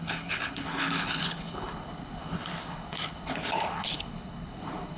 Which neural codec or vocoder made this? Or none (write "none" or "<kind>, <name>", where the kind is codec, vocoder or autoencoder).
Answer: codec, HILCodec